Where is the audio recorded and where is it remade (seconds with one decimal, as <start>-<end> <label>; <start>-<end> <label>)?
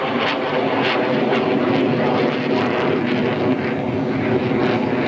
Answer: 0.0-5.1 recorded